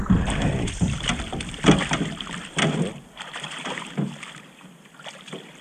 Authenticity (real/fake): fake